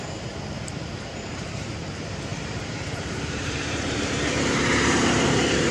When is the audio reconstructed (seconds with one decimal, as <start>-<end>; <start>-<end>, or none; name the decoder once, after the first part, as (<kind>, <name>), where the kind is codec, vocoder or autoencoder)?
0.0-5.7 (vocoder, BigVGAN v2)